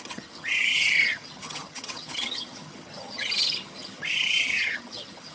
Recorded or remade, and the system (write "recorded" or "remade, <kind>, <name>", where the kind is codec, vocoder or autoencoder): remade, vocoder, HiFi-GAN